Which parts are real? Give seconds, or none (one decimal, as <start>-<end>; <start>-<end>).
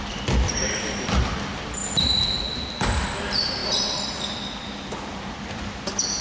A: 0.0-6.2